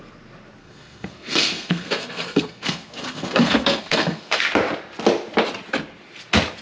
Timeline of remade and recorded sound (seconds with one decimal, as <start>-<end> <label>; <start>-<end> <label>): 0.0-0.6 recorded; 0.6-4.4 remade; 4.4-6.6 recorded